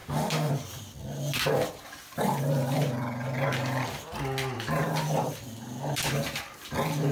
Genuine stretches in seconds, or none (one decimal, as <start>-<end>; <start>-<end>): 0.5-7.1